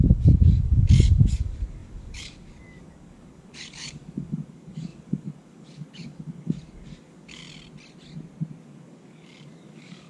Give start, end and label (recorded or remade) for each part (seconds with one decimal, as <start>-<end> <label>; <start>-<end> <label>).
0.0-7.4 remade; 7.4-8.6 recorded; 8.6-10.1 remade